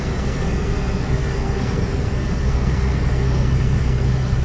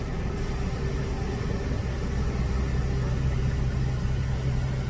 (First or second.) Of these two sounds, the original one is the second